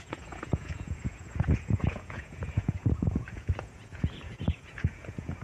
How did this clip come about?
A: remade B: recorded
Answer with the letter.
A